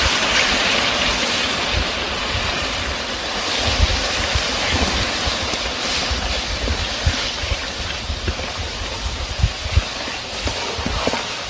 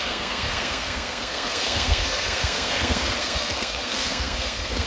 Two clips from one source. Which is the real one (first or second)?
first